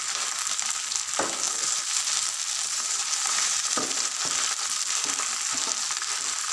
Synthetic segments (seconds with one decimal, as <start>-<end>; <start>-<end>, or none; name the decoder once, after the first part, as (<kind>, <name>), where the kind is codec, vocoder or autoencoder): 2.6-3.8 (vocoder, BigVGAN v2)